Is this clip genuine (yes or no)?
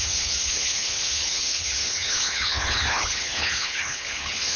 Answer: no